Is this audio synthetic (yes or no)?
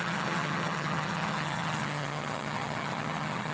yes